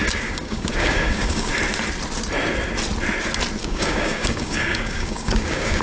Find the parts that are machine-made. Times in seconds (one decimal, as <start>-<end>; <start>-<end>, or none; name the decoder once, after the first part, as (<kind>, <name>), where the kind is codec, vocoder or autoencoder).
0.0-1.5 (codec, DAC); 3.6-5.8